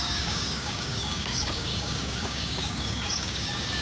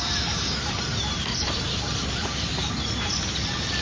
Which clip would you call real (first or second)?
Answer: second